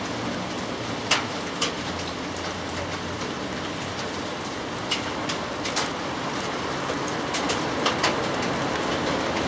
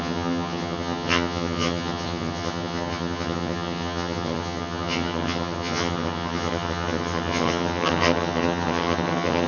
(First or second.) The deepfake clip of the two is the second